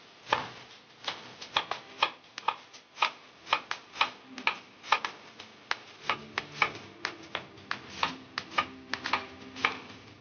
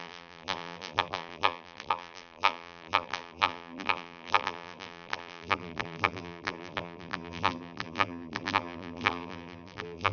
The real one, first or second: first